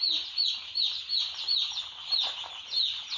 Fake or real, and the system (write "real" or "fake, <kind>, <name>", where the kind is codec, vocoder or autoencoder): real